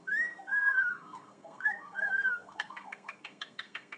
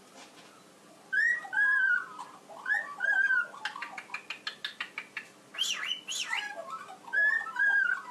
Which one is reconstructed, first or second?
first